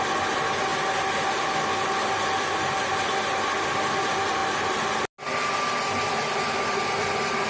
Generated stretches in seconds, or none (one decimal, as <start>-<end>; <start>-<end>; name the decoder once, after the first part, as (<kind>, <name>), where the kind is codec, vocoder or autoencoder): none